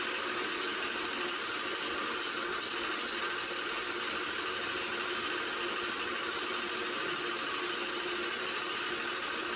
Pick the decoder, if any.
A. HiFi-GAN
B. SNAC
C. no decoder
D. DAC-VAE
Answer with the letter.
C